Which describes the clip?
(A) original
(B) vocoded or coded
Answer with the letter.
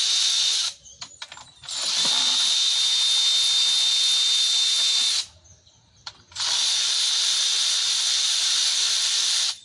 A